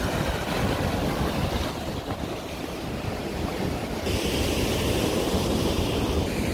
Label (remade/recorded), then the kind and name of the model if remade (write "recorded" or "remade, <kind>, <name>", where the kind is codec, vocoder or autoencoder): recorded